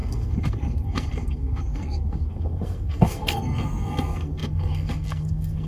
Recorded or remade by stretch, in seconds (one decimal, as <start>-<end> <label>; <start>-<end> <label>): 0.0-5.7 remade